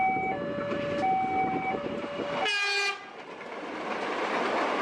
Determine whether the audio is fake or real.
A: real